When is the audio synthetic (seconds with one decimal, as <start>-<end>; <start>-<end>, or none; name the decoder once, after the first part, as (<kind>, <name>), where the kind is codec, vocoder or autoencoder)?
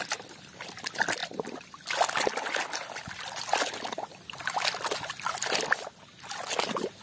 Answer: none